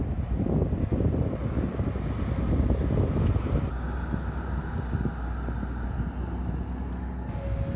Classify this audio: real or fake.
real